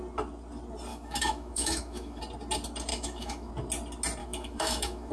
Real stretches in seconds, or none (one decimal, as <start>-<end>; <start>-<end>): 0.0-0.9; 2.2-2.9; 3.5-4.2